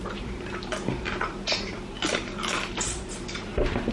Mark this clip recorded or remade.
recorded